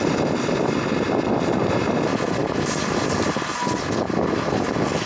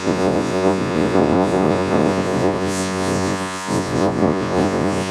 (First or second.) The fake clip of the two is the second